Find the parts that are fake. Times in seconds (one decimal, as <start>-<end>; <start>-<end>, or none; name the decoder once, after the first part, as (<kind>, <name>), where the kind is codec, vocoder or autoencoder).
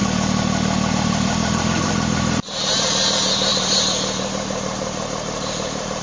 0.9-6.0 (vocoder, BigVGAN v2)